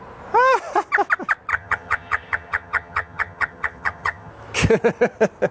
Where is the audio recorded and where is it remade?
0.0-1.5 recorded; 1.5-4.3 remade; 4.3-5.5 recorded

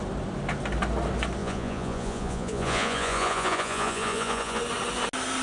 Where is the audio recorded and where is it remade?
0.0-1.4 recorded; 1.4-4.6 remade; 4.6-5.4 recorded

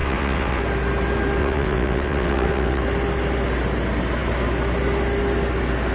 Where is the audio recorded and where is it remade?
0.0-0.6 remade; 0.6-1.4 recorded; 1.4-2.8 remade; 2.8-5.9 recorded

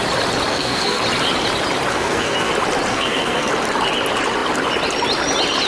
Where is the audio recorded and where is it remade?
0.0-0.5 recorded; 0.5-1.0 remade; 1.0-1.9 recorded; 1.9-2.5 remade; 2.5-2.9 recorded; 2.9-3.5 remade; 3.5-5.7 recorded

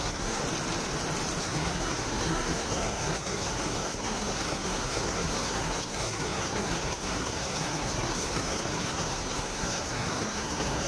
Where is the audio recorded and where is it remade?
0.0-0.4 remade; 0.4-1.4 recorded; 1.4-10.9 remade